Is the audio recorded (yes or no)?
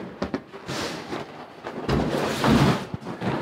yes